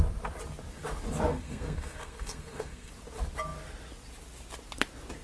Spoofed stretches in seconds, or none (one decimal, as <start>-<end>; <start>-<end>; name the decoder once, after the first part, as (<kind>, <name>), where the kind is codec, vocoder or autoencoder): 1.3-2.9 (codec, SNAC)